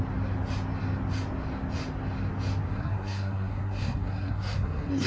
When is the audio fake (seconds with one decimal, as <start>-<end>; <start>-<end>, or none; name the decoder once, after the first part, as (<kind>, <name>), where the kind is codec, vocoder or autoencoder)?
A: 2.7-5.1 (codec, SNAC)